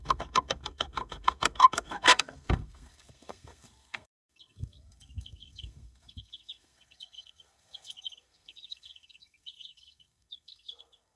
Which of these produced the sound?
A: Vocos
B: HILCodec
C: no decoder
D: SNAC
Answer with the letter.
D